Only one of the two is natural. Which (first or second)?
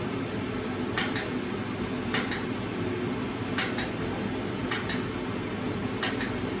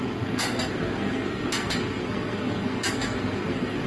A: first